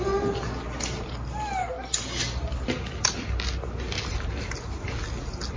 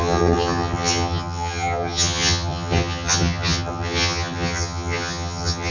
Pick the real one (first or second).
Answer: first